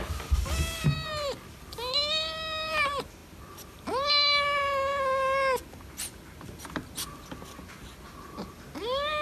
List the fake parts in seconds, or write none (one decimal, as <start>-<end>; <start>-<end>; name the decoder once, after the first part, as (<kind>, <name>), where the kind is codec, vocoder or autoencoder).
none